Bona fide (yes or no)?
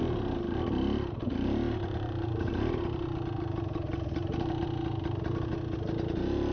yes